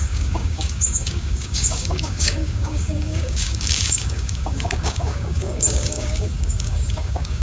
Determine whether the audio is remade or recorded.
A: remade